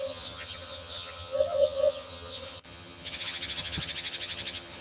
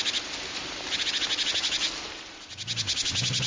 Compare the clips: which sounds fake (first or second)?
first